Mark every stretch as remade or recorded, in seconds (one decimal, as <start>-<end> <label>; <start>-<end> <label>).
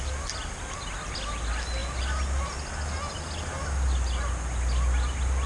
0.0-5.5 recorded